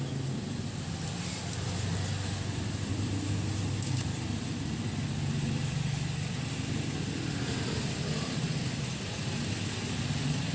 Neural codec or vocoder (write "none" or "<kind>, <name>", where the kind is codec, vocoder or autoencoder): none